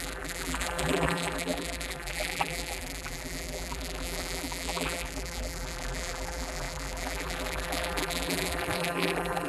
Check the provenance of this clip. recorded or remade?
remade